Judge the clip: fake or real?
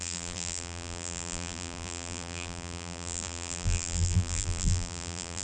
fake